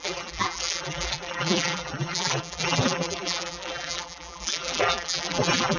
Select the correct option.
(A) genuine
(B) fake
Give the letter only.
B